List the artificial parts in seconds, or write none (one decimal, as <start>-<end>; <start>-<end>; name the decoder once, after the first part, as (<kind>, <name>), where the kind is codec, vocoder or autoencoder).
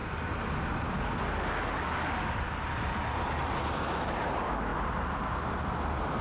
none